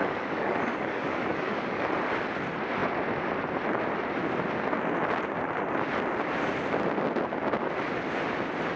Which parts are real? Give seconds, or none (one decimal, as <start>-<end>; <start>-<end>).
1.8-8.8